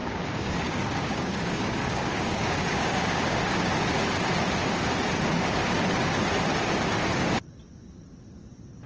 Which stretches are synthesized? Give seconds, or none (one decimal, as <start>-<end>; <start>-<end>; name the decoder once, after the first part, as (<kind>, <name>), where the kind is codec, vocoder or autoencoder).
0.0-3.7 (codec, DAC)